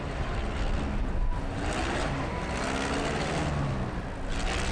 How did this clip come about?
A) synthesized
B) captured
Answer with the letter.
B